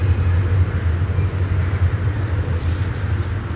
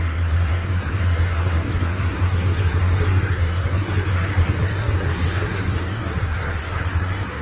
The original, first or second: first